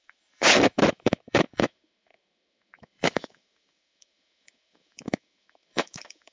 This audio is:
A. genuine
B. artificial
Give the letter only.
B